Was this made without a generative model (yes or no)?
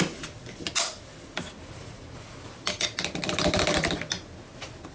yes